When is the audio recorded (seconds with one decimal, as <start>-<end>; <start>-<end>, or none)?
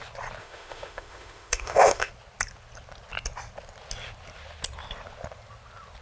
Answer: 0.0-0.4; 2.1-6.0